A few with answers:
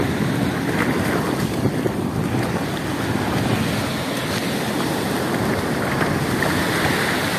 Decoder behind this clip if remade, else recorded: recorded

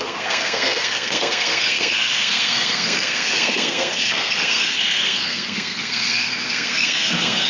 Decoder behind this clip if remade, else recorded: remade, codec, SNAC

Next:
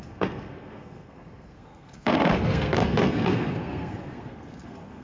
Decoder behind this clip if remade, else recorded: remade, codec, SNAC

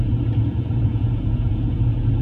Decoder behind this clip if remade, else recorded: remade, vocoder, Vocos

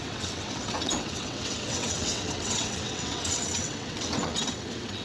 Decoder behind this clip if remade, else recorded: remade, vocoder, WaveNeXt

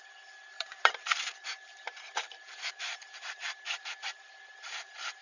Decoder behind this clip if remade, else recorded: remade, vocoder, BigVGAN v2